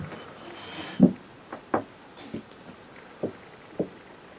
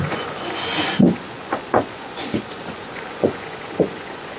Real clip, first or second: first